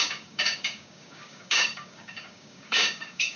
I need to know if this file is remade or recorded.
remade